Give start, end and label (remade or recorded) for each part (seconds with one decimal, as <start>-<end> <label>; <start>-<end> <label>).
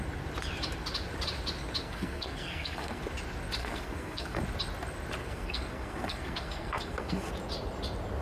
0.0-1.8 recorded; 1.8-3.0 remade; 3.0-3.6 recorded; 3.6-4.4 remade; 4.4-5.2 recorded; 5.2-7.3 remade; 7.3-8.2 recorded